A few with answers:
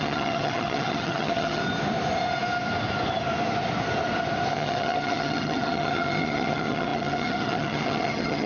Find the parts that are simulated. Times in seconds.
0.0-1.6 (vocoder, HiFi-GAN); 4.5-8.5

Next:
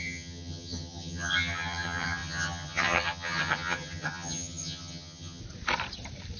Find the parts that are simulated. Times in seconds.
0.0-5.4 (vocoder, HiFi-GAN)